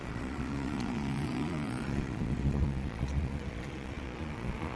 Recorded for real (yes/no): no